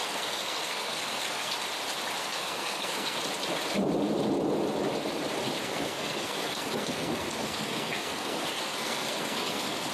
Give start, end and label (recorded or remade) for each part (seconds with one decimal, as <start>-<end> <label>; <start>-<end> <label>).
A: 0.0-1.5 remade; 1.5-2.2 recorded; 2.2-3.2 remade; 3.2-5.6 recorded; 5.6-9.9 remade